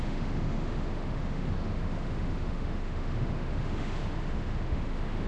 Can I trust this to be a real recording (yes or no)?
no